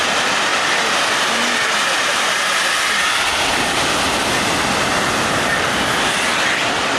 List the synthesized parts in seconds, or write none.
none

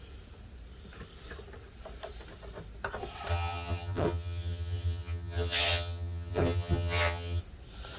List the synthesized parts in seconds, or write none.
3.3-7.4 (vocoder, HiFi-GAN)

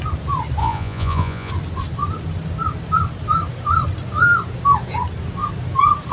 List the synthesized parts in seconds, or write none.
0.6-1.5 (vocoder, Vocos)

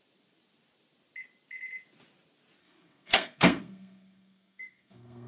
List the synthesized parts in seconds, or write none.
2.6-5.3 (codec, SNAC)